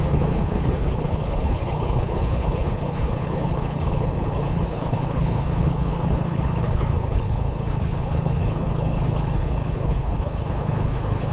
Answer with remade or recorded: remade